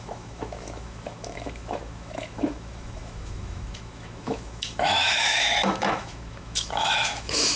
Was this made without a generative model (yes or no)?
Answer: no